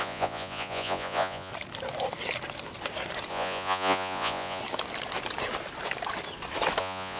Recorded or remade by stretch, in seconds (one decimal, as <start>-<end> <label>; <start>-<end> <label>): 0.0-1.5 remade; 1.5-3.3 recorded; 3.3-4.6 remade; 4.6-6.8 recorded; 6.8-7.2 remade